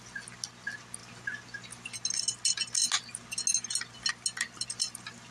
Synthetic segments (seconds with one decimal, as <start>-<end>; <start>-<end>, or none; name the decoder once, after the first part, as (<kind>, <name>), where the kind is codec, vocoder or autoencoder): none